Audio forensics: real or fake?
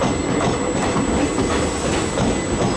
real